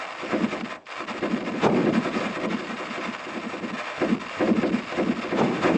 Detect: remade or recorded recorded